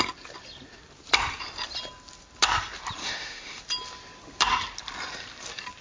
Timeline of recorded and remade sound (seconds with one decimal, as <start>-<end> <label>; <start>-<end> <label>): 0.0-3.0 recorded; 3.0-3.6 remade; 3.6-5.8 recorded